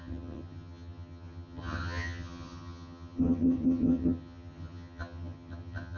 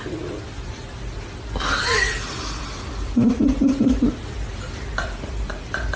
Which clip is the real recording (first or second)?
second